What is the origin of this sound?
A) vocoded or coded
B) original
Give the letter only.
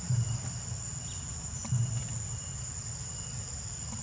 B